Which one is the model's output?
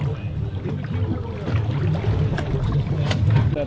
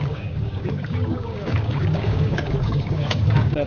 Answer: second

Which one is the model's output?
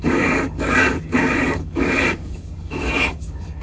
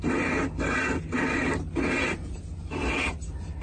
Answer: first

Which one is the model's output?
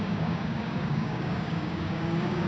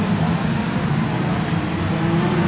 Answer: first